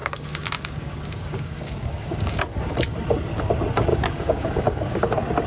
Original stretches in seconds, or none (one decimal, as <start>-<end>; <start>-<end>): 2.4-3.9; 5.1-5.5